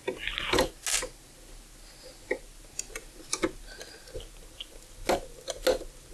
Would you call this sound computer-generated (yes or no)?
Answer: no